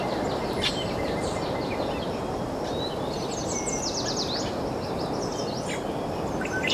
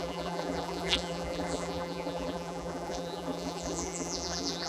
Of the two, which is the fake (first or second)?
second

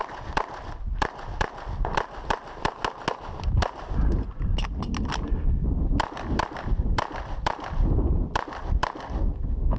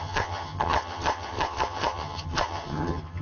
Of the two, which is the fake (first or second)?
second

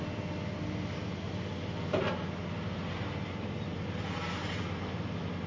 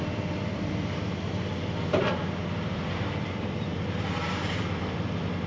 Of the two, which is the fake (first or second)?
second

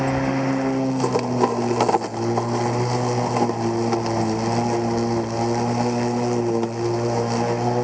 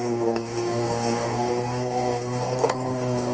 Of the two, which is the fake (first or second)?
second